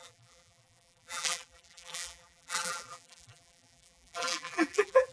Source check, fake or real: fake